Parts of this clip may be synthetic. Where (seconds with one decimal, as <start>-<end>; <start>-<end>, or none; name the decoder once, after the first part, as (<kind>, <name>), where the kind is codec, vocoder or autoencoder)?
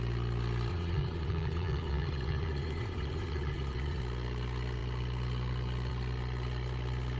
0.7-4.0 (vocoder, Vocos)